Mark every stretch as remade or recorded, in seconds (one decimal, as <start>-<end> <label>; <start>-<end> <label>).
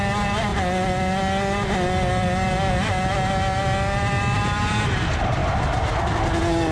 0.0-6.7 recorded